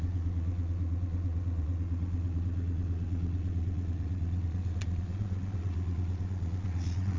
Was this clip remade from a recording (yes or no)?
yes